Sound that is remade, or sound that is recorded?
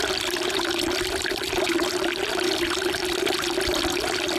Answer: remade